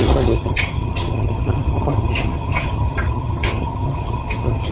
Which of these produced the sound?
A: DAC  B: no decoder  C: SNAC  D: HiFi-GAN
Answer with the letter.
D